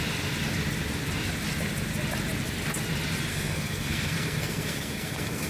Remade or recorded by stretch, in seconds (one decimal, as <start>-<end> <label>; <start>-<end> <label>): 0.0-3.3 recorded; 3.3-5.5 remade